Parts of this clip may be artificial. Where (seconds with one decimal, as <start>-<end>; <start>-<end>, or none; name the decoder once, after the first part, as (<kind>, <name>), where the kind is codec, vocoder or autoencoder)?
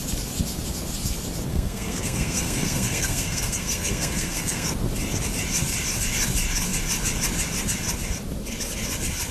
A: 1.5-4.7 (codec, SNAC)